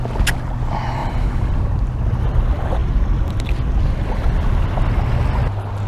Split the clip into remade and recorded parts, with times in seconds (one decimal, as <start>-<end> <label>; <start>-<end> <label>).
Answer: 0.0-5.9 recorded